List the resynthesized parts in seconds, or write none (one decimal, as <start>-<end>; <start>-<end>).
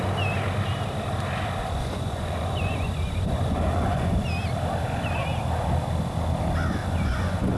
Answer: 1.6-4.2; 6.8-7.6